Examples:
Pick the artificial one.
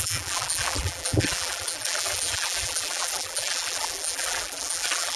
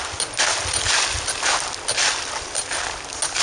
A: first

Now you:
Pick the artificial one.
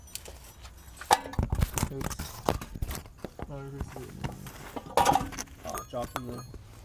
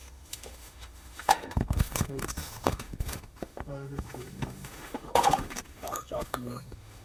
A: second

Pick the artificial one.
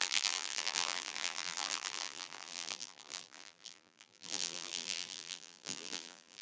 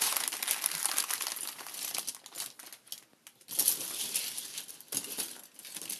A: first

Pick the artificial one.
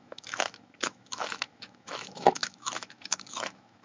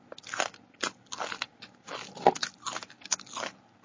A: first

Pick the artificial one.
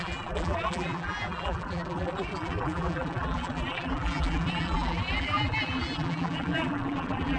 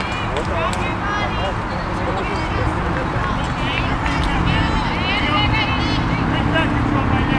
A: first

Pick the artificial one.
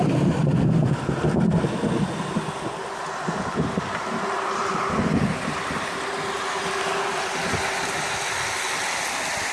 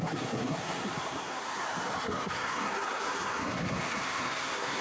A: second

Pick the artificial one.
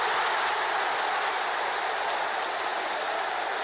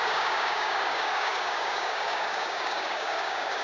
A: second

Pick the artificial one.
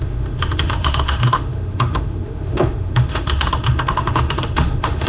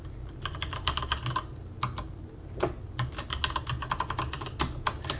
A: first